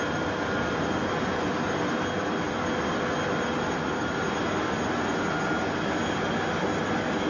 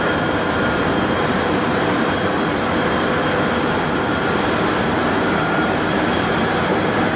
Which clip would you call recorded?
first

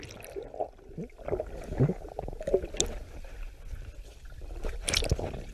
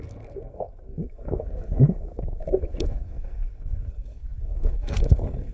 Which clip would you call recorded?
first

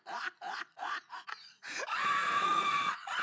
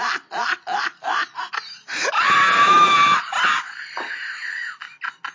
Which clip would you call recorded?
second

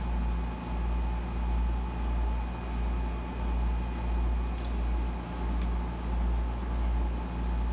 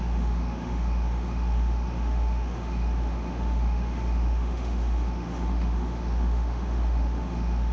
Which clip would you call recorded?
first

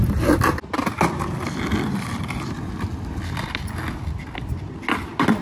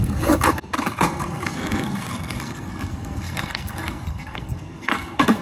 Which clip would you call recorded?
first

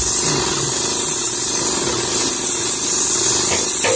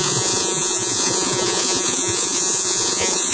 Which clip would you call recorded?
first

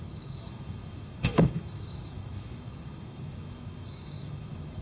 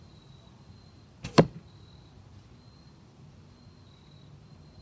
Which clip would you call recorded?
second